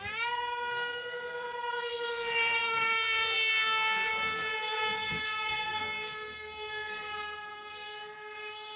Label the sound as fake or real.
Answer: fake